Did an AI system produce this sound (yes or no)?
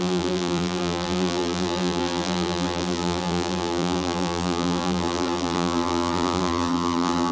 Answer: yes